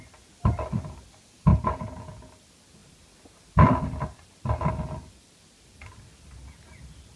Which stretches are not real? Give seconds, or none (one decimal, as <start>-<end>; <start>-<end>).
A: 1.5-2.3